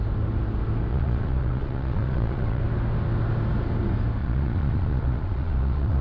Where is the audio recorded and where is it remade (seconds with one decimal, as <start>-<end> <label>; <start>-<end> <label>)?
0.0-0.9 recorded; 0.9-2.6 remade; 2.6-4.2 recorded; 4.2-6.0 remade